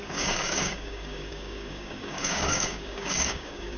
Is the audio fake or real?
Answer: fake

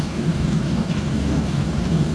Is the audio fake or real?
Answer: fake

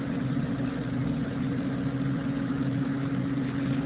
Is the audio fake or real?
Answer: real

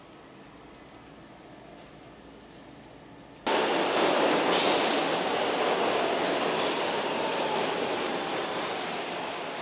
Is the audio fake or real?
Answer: real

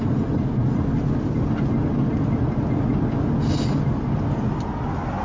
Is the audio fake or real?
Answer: real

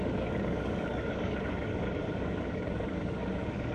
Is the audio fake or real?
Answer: fake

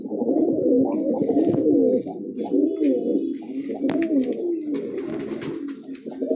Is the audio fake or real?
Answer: real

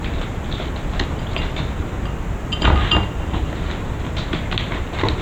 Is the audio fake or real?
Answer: real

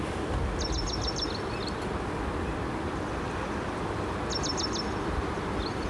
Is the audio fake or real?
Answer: real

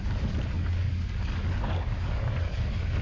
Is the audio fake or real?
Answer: fake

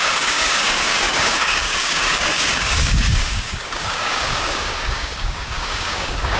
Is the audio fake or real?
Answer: fake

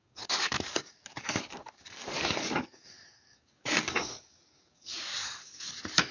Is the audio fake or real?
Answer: fake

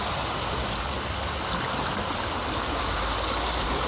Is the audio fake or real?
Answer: real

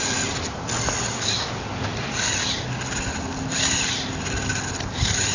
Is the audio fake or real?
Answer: real